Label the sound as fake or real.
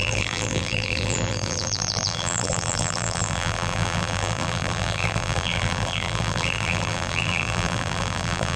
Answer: fake